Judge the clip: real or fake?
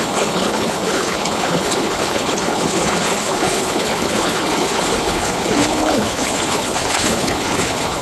fake